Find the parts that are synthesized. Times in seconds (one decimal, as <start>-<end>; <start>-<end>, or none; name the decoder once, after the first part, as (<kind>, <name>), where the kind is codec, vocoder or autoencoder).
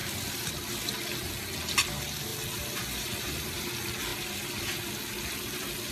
0.0-0.5 (vocoder, BigVGAN v2); 2.3-3.6; 4.1-5.9